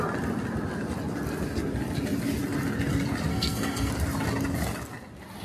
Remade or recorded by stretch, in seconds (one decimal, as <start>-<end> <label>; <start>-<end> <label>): 0.0-3.3 recorded; 3.3-3.9 remade; 3.9-5.4 recorded